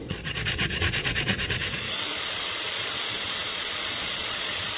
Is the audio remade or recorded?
remade